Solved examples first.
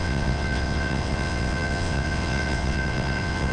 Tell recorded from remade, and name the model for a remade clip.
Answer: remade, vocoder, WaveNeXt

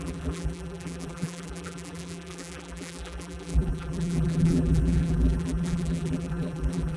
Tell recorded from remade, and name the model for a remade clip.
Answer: remade, vocoder, BigVGAN v2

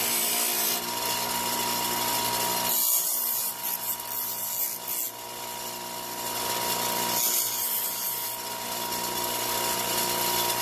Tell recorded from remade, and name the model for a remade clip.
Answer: recorded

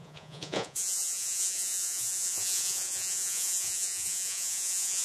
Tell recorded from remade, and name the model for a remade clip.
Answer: remade, vocoder, Vocos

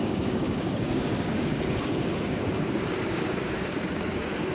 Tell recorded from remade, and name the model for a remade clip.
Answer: remade, codec, DAC